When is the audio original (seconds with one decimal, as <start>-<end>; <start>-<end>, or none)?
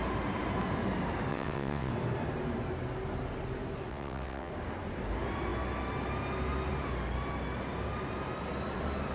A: 0.0-1.3; 1.9-3.9; 4.5-9.1